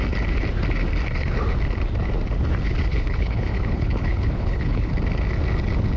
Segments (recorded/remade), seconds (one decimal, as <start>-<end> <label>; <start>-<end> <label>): 0.0-2.9 recorded; 2.9-4.9 remade; 4.9-6.0 recorded